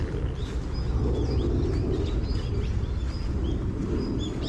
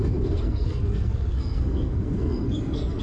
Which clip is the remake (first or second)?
second